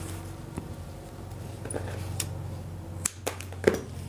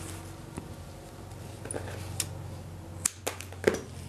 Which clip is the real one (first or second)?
second